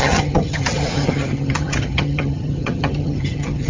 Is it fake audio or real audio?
fake